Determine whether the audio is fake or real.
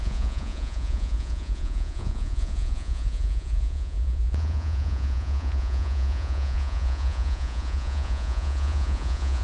fake